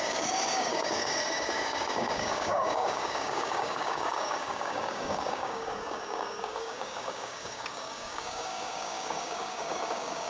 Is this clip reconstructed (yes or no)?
yes